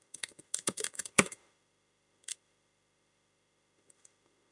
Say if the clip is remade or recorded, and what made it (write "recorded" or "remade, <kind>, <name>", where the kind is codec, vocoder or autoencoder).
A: remade, autoencoder, DAC-VAE